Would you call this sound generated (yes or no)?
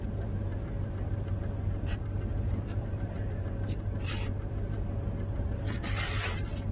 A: yes